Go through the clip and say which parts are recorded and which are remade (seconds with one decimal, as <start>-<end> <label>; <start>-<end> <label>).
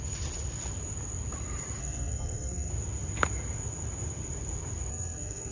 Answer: 0.0-1.8 recorded; 1.8-2.7 remade; 2.7-4.9 recorded; 4.9-5.5 remade